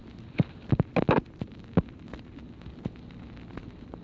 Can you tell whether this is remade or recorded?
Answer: recorded